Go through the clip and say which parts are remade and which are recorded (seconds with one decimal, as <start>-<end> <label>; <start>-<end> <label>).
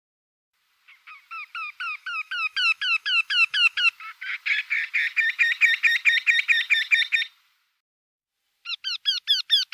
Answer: 0.0-2.0 recorded; 2.0-3.9 remade; 3.9-9.7 recorded